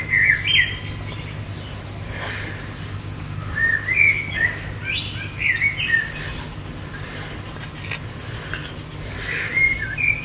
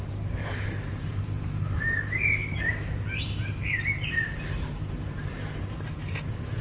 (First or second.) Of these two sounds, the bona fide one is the first